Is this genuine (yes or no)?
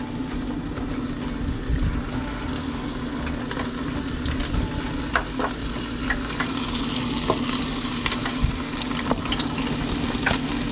yes